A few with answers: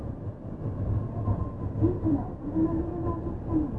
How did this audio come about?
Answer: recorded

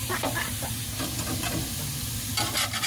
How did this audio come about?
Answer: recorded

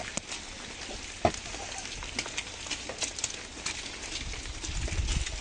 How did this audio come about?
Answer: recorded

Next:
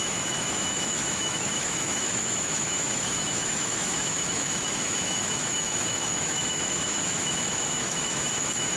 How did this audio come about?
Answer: remade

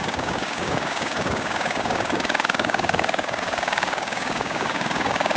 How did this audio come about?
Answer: remade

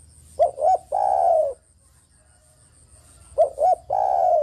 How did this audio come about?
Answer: recorded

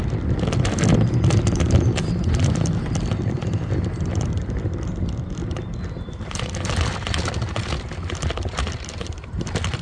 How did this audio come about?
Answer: recorded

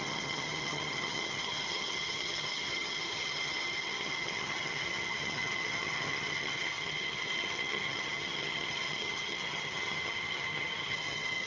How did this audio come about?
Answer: remade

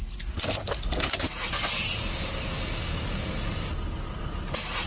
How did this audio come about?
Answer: recorded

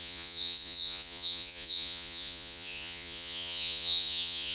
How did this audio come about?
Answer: remade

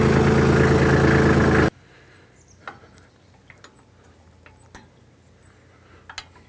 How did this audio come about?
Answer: recorded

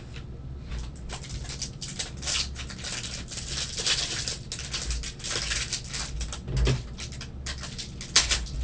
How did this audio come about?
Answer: recorded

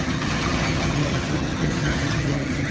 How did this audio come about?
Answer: remade